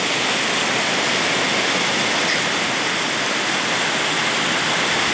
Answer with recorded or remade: recorded